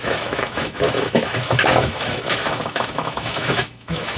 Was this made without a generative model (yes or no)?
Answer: no